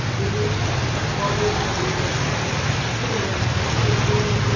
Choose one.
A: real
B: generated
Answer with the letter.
A